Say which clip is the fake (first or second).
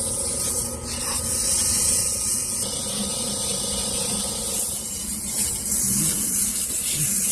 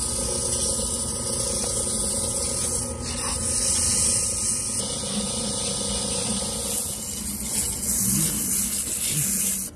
first